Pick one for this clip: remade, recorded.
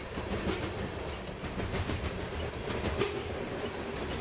recorded